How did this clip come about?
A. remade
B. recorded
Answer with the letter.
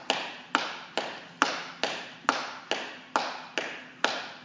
B